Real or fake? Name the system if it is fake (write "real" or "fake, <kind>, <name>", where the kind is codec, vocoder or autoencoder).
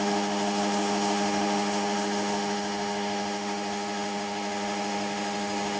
fake, autoencoder, DAC-VAE